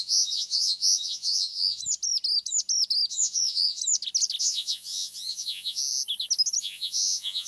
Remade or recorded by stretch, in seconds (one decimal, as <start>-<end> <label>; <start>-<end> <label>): 0.0-1.8 remade; 1.8-3.1 recorded; 3.1-3.8 remade; 3.8-4.4 recorded; 4.4-5.8 remade; 5.8-6.6 recorded; 6.6-7.5 remade